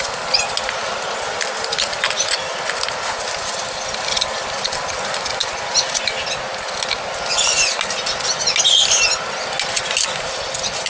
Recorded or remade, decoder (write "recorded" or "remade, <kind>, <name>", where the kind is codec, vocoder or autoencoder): recorded